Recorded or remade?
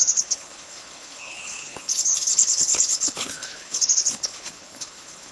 remade